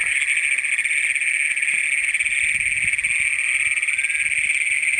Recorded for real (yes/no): yes